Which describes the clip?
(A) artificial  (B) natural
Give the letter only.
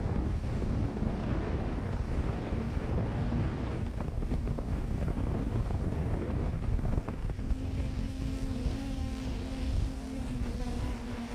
A